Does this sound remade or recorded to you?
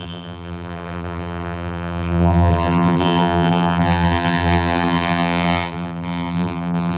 remade